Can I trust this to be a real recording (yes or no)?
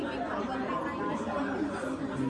yes